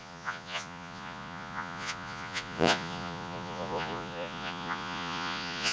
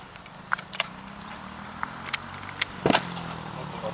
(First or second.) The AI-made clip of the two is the first